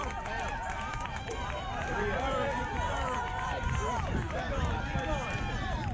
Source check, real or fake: fake